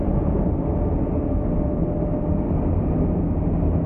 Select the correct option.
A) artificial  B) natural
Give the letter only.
B